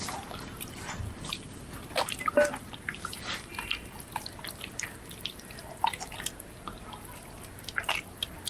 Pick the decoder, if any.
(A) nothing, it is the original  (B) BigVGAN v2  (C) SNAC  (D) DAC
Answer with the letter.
A